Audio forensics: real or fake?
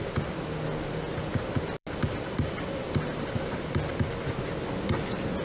real